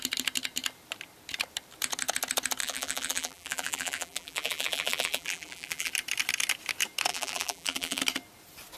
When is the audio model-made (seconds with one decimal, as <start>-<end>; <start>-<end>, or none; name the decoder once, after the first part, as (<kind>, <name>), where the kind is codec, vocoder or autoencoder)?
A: 2.6-5.9 (vocoder, BigVGAN v2); 7.1-8.0